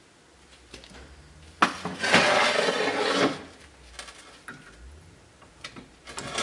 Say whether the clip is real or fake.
real